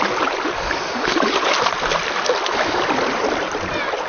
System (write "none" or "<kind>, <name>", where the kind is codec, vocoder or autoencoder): none